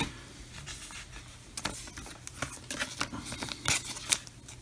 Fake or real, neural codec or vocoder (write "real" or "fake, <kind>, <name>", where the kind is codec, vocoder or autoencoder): real